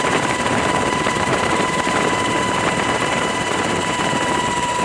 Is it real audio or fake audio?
fake